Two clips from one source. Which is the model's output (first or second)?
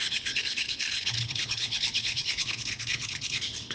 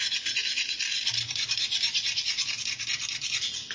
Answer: first